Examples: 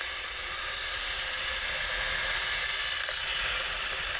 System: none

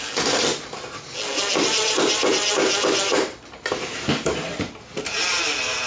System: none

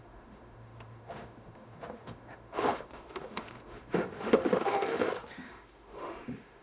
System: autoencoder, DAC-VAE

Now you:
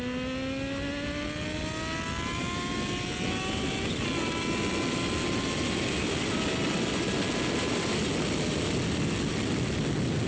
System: none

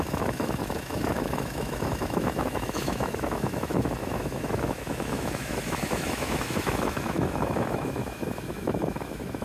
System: autoencoder, DAC-VAE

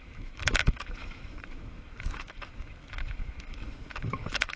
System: autoencoder, DAC-VAE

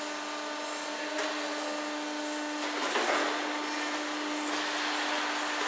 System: none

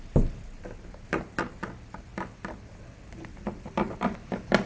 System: none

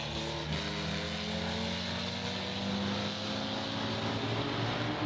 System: none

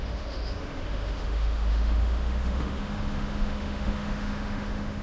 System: autoencoder, DAC-VAE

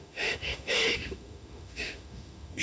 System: autoencoder, DAC-VAE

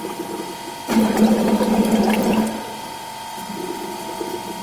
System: none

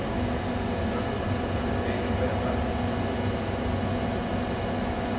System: none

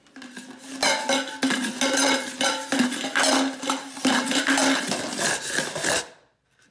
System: none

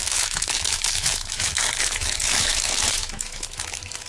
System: autoencoder, DAC-VAE